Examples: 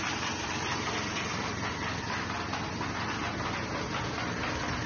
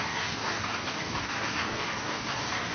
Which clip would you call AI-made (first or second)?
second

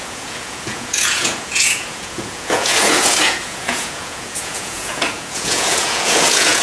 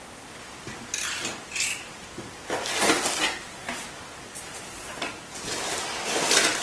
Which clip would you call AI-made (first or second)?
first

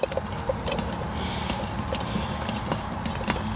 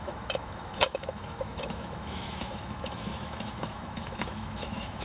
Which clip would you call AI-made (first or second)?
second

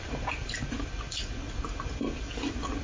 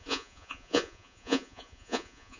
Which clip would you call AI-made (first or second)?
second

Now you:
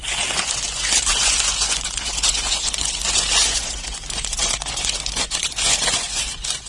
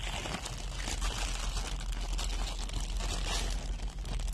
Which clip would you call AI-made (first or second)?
first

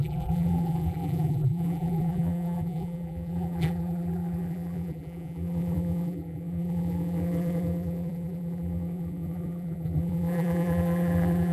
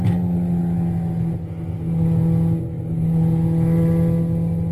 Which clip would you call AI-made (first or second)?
first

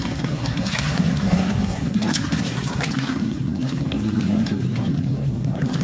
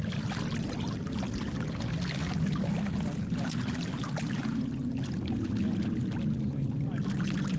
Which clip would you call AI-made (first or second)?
first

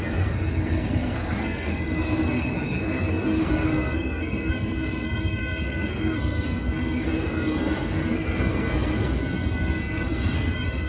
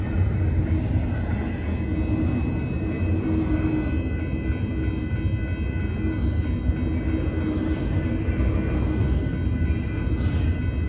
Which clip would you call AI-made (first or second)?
first